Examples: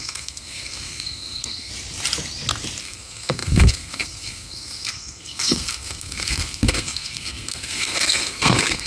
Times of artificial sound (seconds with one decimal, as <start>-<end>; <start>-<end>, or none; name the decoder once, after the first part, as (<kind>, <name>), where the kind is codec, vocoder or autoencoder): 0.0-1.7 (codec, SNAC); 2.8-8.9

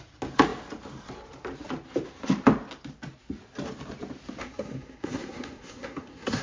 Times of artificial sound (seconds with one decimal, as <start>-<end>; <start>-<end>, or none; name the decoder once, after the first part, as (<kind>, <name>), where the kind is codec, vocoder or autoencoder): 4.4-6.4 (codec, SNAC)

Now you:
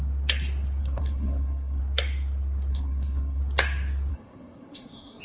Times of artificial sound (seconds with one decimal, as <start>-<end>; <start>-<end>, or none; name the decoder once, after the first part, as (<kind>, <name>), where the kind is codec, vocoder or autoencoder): 0.8-1.8 (codec, SNAC); 2.7-3.4; 4.1-5.2

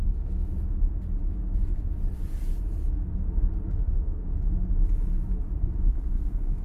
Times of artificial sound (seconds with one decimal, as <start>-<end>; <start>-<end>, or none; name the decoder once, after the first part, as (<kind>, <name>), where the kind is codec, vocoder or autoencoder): 0.0-0.5 (codec, SNAC); 3.8-4.3; 5.9-6.6

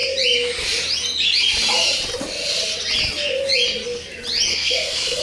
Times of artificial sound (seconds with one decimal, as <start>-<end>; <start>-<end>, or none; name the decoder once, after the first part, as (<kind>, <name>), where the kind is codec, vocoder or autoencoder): 4.5-5.2 (codec, SNAC)